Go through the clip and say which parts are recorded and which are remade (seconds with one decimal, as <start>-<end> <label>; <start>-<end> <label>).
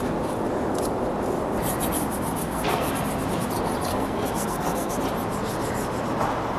0.0-2.4 recorded; 2.4-2.9 remade; 2.9-3.9 recorded; 3.9-4.9 remade; 4.9-6.6 recorded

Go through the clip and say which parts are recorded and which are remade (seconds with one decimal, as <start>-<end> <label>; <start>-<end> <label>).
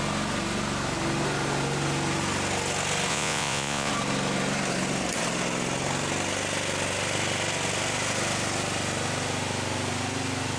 0.0-3.1 recorded; 3.1-3.9 remade; 3.9-10.6 recorded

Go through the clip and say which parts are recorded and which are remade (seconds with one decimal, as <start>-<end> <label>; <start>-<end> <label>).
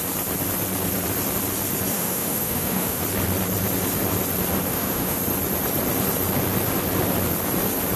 0.0-1.9 recorded; 1.9-3.0 remade; 3.0-4.7 recorded; 4.7-5.2 remade; 5.2-8.0 recorded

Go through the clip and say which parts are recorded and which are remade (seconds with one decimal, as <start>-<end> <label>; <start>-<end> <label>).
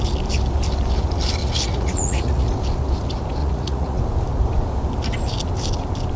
0.0-1.4 recorded; 1.4-2.5 remade; 2.5-3.4 recorded; 3.4-4.0 remade; 4.0-6.2 recorded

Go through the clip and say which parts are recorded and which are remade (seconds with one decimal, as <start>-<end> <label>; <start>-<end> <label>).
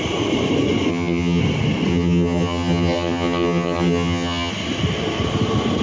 0.0-0.9 recorded; 0.9-1.4 remade; 1.4-1.9 recorded; 1.9-4.5 remade; 4.5-5.8 recorded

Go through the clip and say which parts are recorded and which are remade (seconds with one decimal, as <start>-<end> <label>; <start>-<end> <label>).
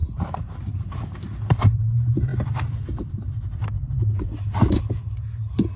0.0-5.8 remade